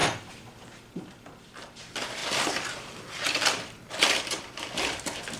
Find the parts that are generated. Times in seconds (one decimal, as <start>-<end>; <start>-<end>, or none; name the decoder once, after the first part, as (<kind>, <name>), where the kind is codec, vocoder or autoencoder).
0.0-1.8 (vocoder, BigVGAN v2); 2.2-4.4